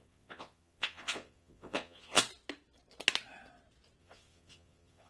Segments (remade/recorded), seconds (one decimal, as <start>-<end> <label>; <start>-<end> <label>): 0.0-2.2 remade; 2.2-4.0 recorded; 4.0-5.1 remade